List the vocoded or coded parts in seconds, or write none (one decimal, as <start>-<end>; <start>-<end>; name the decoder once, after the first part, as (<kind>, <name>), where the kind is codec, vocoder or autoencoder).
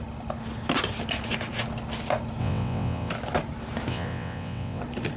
2.4-3.1 (vocoder, WaveNeXt); 3.9-4.8